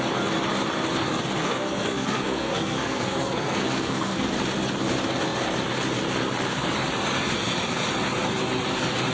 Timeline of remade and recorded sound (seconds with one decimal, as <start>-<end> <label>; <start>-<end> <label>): 0.0-1.4 recorded; 1.4-4.3 remade; 4.3-9.1 recorded